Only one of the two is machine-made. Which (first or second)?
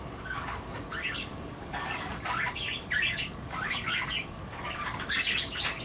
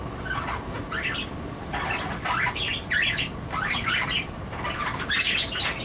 first